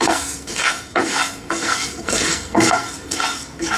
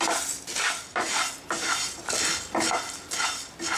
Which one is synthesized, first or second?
first